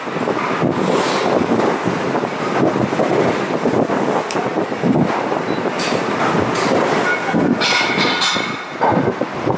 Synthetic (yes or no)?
no